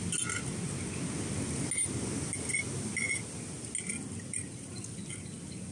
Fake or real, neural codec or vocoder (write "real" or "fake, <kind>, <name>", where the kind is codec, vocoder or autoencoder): real